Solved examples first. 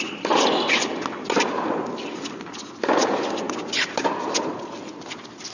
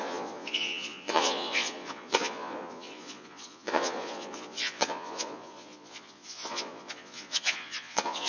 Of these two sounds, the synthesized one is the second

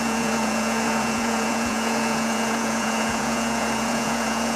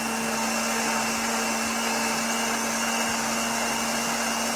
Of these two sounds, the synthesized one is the first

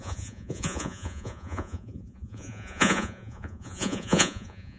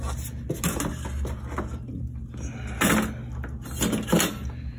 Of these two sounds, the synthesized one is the first